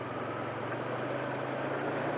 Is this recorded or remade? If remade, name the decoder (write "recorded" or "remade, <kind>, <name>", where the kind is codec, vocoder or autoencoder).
recorded